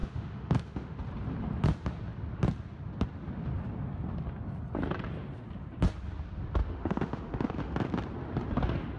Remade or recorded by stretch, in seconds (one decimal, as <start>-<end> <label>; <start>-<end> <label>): 0.0-1.0 remade; 1.0-6.6 recorded; 6.6-7.9 remade; 7.9-9.0 recorded